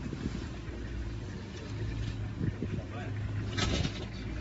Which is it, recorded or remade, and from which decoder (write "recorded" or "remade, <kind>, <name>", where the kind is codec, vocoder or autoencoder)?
recorded